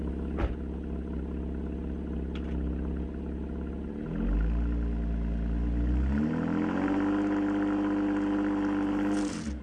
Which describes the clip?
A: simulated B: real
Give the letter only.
B